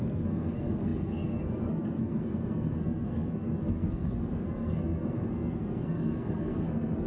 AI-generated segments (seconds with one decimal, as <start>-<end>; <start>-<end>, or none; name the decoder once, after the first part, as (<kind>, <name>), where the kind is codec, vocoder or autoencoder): 0.0-7.1 (codec, SNAC)